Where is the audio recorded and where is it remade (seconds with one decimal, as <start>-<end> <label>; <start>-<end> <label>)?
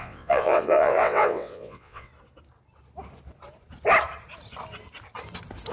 0.0-2.1 remade; 2.1-5.7 recorded